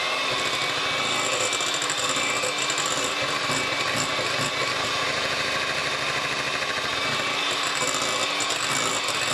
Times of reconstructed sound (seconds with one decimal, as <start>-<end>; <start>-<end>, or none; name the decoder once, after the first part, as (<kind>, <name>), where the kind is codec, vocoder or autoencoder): none